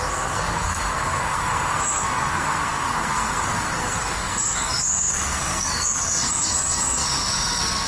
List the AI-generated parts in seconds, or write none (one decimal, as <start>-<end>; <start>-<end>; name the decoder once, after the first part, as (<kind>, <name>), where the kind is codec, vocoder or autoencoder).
0.0-7.9 (codec, SNAC)